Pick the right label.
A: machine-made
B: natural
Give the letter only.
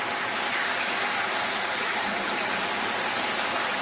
B